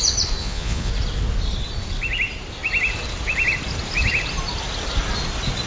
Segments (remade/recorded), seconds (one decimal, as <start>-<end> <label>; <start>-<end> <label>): 0.0-0.4 recorded; 0.4-0.9 remade; 0.9-5.7 recorded